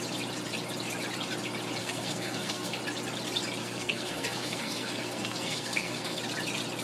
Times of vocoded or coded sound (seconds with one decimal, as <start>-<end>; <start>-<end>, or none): 1.8-2.8; 3.6-6.2